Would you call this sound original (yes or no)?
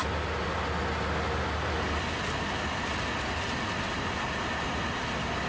yes